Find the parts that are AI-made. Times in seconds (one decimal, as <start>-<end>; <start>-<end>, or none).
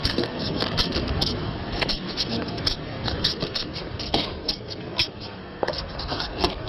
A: 0.0-6.7